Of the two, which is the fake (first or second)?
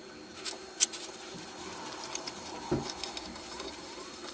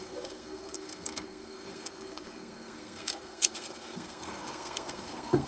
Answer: second